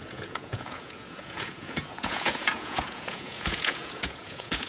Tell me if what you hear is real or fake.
fake